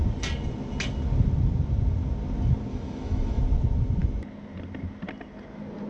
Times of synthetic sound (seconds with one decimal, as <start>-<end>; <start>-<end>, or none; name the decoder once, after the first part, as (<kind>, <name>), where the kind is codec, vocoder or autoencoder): 2.7-3.4 (autoencoder, DAC-VAE)